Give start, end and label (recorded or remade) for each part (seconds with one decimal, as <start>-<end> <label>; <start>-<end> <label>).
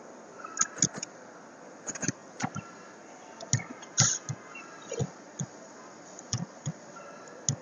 0.0-5.0 recorded; 5.0-7.0 remade; 7.0-7.6 recorded